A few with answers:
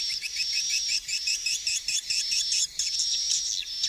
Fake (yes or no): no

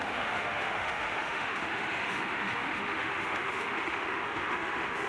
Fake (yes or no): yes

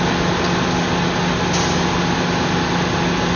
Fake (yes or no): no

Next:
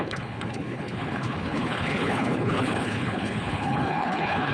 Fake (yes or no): yes